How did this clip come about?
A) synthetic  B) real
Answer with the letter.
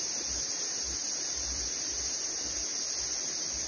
B